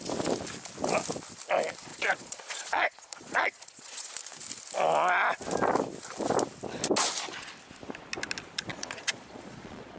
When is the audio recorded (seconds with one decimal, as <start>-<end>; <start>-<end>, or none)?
0.0-1.9; 4.1-8.7